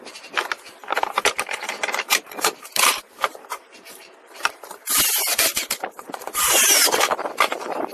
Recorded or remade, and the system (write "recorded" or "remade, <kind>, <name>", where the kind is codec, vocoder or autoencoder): remade, vocoder, BigVGAN v2